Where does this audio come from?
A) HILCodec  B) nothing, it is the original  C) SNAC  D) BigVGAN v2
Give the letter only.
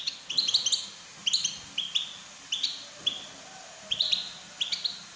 B